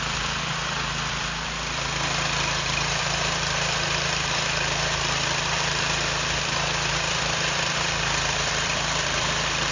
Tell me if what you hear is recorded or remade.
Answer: remade